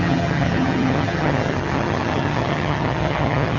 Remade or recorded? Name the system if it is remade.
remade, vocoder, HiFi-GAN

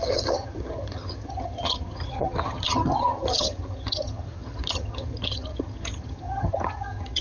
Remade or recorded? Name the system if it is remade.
remade, vocoder, HiFi-GAN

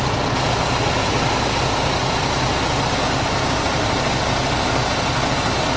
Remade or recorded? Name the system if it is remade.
recorded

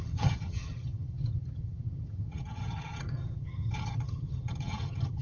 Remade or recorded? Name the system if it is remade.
remade, vocoder, HiFi-GAN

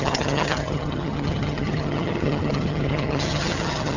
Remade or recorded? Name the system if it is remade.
remade, vocoder, HiFi-GAN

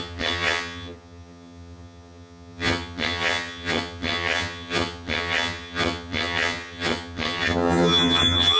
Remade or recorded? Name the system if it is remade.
remade, vocoder, HiFi-GAN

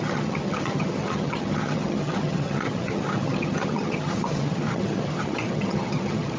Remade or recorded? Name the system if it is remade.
remade, vocoder, HiFi-GAN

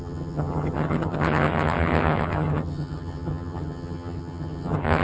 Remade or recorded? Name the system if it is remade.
remade, vocoder, HiFi-GAN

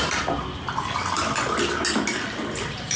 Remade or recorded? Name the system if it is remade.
recorded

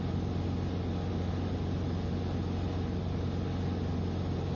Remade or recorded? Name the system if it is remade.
recorded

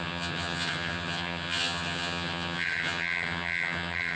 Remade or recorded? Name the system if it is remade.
remade, vocoder, HiFi-GAN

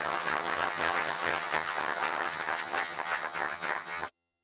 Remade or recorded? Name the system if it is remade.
remade, vocoder, HiFi-GAN